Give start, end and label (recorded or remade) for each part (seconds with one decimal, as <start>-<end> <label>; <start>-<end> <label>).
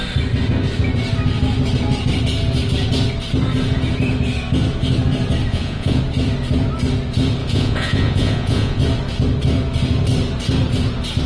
0.0-5.5 recorded; 5.5-6.0 remade; 6.0-7.4 recorded; 7.4-8.8 remade; 8.8-11.3 recorded